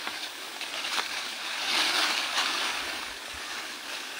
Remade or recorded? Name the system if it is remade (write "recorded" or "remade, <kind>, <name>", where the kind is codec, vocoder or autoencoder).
remade, codec, DAC